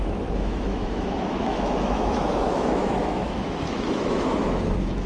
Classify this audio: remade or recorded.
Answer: remade